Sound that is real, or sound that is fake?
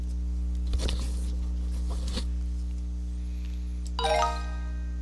real